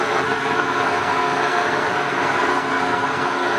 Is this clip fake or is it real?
fake